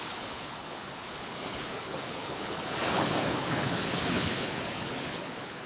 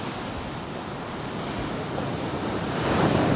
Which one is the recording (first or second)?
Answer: second